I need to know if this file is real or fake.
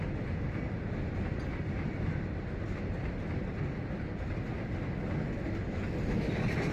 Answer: real